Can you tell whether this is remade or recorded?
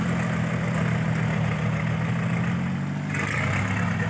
recorded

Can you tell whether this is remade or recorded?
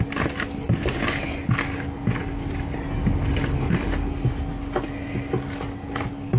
recorded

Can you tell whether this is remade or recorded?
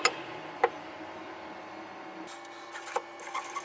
recorded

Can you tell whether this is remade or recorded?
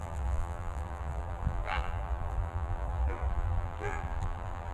remade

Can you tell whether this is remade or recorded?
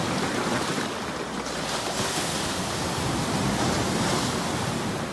recorded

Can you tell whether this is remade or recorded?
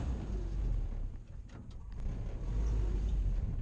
recorded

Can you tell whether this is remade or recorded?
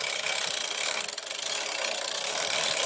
recorded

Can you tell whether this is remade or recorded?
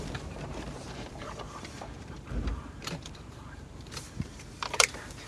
remade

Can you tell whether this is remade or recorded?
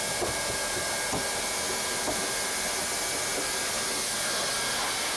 recorded